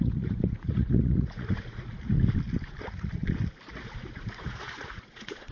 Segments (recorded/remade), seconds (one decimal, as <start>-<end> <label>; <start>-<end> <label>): 0.0-2.1 remade; 2.1-2.8 recorded; 2.8-3.2 remade; 3.2-3.7 recorded; 3.7-5.5 remade